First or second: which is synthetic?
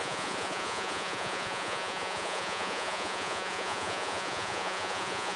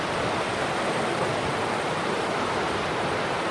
first